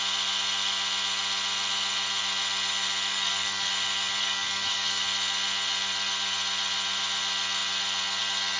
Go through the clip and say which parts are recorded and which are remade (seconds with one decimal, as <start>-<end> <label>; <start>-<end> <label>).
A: 0.0-3.1 recorded; 3.1-3.7 remade; 3.7-4.2 recorded; 4.2-5.0 remade; 5.0-8.6 recorded